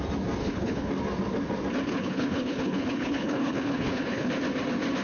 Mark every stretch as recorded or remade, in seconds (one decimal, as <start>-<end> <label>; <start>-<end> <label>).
0.0-0.4 recorded; 0.4-0.9 remade; 0.9-1.9 recorded; 1.9-4.3 remade; 4.3-5.0 recorded